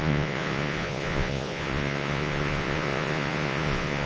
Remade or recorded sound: remade